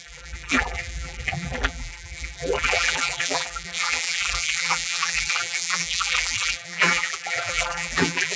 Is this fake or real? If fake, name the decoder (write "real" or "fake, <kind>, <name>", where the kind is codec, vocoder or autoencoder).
fake, vocoder, BigVGAN v2